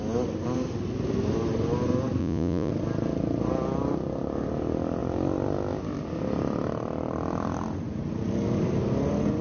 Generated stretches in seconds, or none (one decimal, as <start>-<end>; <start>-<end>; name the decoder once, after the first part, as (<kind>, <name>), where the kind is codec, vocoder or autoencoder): 2.2-2.7 (vocoder, Vocos)